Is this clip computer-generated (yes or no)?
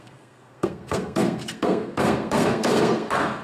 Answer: yes